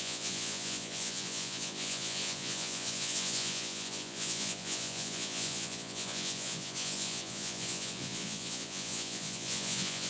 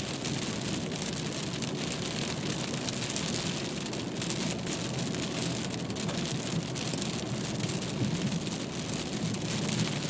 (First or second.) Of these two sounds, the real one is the second